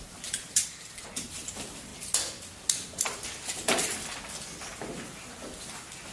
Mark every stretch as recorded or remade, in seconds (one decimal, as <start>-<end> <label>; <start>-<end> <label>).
0.0-0.6 remade; 0.6-1.2 recorded; 1.2-1.9 remade; 1.9-5.6 recorded; 5.6-6.1 remade